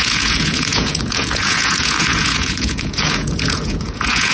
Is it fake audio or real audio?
fake